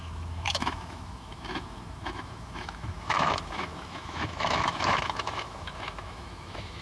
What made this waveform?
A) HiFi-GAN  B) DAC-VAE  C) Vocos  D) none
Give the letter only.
B